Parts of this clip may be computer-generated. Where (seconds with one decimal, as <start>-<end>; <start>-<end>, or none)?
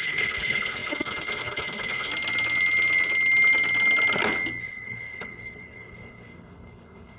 0.0-2.1; 4.6-7.2